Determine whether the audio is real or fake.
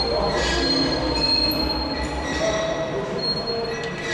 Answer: real